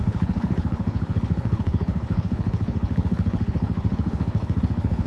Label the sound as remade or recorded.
remade